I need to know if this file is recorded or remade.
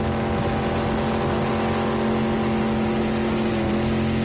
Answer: recorded